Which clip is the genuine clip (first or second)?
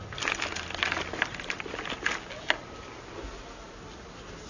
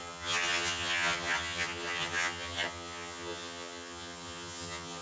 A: first